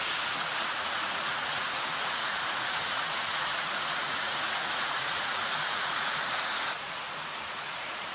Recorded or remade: remade